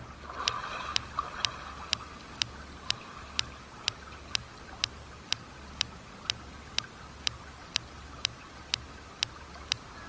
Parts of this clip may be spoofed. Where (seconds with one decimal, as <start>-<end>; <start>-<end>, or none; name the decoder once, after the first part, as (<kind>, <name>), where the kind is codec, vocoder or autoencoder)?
none